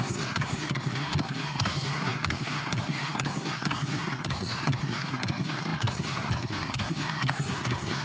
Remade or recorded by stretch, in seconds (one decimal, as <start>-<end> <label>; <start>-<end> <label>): 0.0-8.0 remade

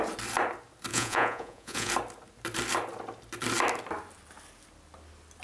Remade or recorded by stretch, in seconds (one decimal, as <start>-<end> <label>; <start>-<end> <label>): 0.0-0.9 recorded; 0.9-1.9 remade; 1.9-5.4 recorded

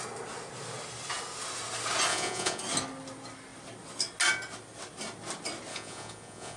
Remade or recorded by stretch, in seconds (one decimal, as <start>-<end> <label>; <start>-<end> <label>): 0.0-2.1 recorded; 2.1-2.6 remade; 2.6-5.7 recorded; 5.7-6.6 remade